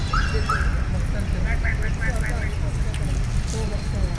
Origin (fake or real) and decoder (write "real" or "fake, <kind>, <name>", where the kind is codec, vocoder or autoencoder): real